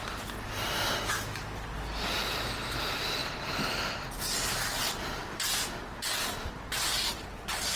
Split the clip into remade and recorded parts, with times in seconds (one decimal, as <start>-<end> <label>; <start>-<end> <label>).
0.0-7.8 recorded